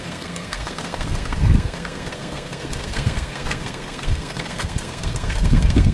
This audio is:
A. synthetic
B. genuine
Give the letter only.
A